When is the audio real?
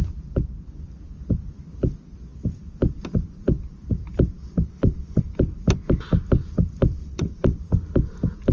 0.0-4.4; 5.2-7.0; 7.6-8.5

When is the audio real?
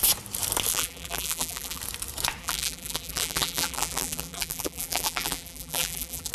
0.0-0.7; 1.8-2.4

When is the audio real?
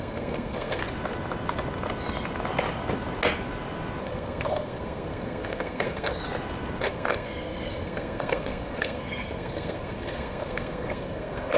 0.8-4.0; 6.2-6.8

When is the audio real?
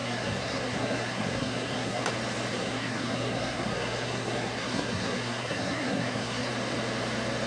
2.0-2.5; 6.5-7.5